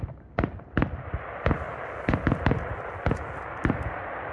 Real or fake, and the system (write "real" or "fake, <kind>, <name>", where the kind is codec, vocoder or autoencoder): real